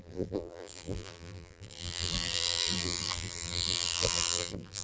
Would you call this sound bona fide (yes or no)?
no